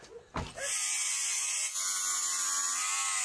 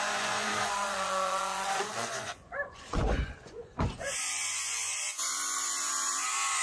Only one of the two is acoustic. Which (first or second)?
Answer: first